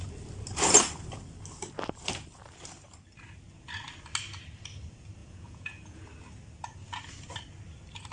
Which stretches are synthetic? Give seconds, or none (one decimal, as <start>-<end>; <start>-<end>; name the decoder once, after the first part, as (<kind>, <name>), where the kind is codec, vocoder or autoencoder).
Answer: 5.2-6.0 (vocoder, Vocos)